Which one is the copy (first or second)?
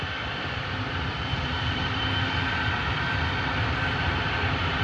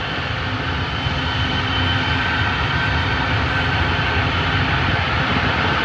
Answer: first